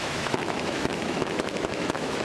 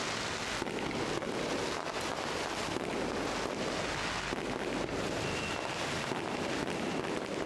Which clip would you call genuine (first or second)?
second